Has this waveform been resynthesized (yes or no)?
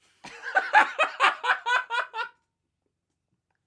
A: no